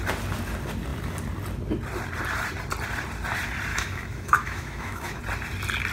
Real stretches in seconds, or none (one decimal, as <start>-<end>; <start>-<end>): 0.0-3.7; 5.2-5.9